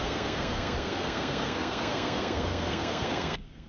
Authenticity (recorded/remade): remade